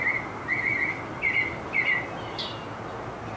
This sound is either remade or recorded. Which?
recorded